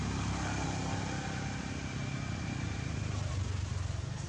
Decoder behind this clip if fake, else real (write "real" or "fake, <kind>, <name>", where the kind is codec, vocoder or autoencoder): real